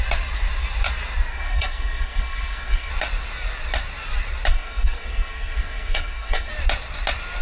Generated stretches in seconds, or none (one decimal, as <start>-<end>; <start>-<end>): 1.3-2.9; 4.5-6.5